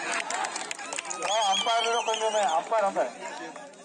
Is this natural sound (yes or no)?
yes